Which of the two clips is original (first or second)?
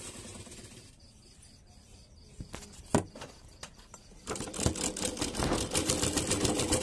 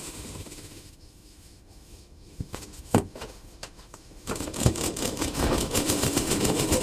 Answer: first